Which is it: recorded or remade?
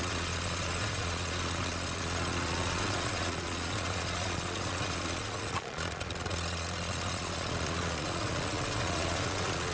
remade